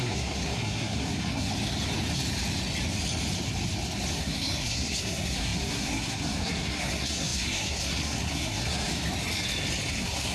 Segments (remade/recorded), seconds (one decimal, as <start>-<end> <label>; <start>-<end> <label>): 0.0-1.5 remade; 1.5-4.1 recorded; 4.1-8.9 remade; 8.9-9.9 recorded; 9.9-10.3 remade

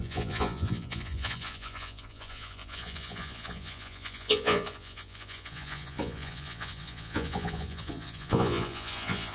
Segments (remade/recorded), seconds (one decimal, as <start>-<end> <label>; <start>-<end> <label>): 0.0-9.3 remade

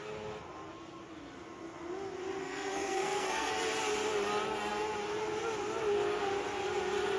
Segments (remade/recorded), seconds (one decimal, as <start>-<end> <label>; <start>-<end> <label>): 0.0-2.4 recorded; 2.4-3.5 remade; 3.5-7.2 recorded

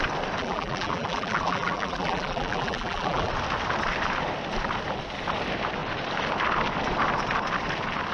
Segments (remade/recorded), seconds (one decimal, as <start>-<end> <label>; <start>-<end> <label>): 0.0-0.4 recorded; 0.4-3.3 remade; 3.3-8.1 recorded